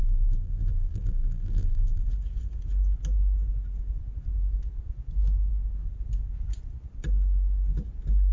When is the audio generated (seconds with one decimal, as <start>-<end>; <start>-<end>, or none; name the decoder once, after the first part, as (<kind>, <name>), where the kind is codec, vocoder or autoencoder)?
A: 0.0-2.1 (vocoder, BigVGAN v2)